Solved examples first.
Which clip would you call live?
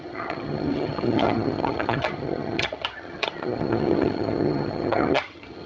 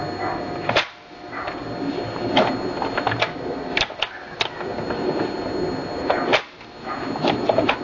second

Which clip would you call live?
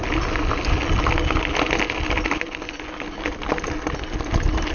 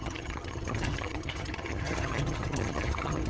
first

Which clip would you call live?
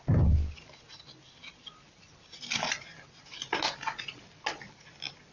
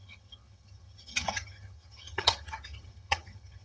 first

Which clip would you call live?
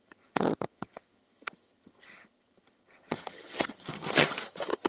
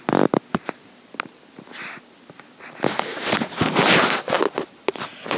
second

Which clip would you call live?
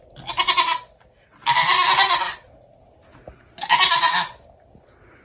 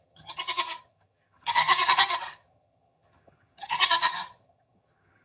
first